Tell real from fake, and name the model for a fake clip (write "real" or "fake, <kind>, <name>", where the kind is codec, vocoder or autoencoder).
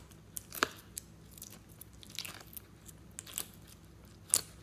real